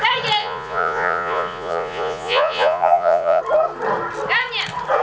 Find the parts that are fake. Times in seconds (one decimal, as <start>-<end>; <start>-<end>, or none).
0.4-3.4